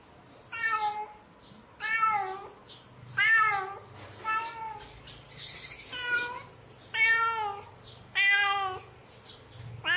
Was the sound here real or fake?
real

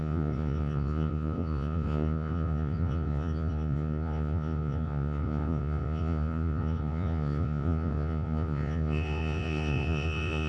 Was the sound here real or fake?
fake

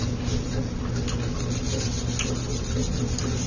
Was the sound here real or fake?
real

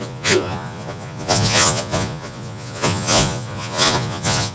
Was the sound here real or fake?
fake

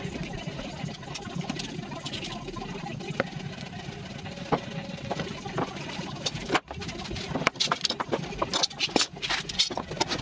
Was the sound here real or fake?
real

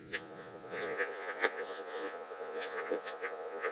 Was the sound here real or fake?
fake